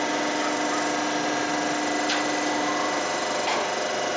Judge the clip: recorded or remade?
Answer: recorded